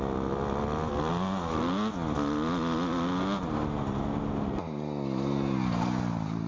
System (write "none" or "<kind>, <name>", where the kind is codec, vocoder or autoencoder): none